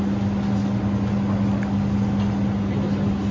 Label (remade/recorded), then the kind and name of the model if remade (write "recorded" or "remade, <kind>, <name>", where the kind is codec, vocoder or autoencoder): recorded